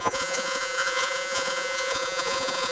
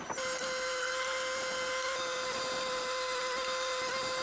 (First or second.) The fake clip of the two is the first